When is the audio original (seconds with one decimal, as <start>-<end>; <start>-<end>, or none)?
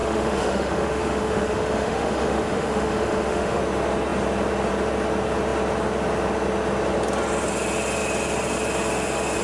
3.6-9.4